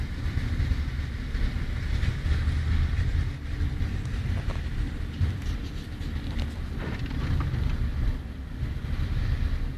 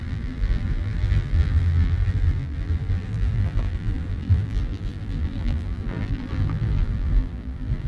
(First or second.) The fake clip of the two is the second